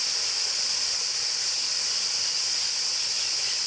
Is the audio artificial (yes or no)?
no